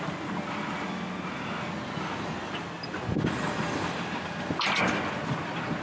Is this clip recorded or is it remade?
recorded